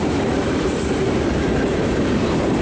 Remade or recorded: remade